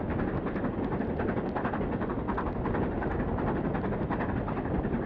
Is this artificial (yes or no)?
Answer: no